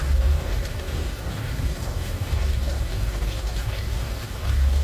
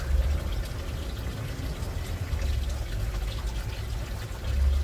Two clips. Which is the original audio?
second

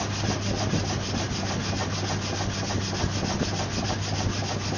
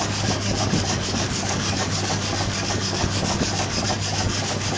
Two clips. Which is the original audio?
first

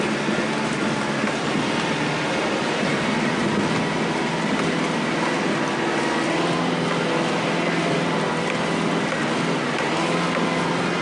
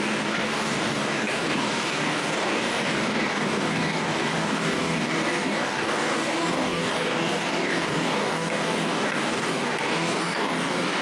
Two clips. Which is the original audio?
first